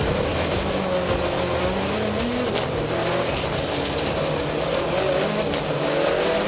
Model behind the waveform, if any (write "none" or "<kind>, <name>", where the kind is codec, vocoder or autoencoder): none